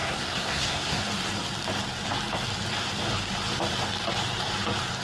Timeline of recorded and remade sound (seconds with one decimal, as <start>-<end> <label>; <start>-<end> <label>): 0.0-1.0 remade; 1.0-5.0 recorded